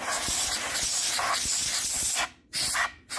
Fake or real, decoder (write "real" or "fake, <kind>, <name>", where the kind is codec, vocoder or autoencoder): real